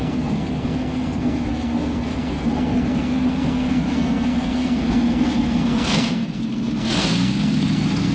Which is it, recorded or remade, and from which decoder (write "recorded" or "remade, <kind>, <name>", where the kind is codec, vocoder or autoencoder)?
remade, codec, SNAC